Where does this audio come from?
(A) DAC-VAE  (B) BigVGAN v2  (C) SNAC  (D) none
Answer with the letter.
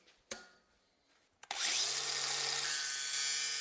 D